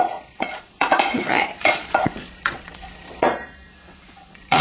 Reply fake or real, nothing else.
fake